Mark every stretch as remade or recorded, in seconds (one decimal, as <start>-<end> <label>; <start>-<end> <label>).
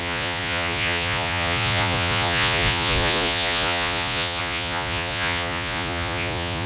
0.0-6.7 remade